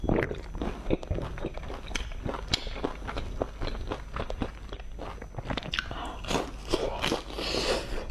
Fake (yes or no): no